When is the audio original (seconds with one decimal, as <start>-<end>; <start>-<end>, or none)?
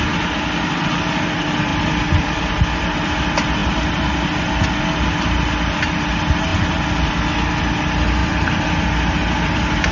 0.0-1.7; 2.5-8.2; 8.7-9.9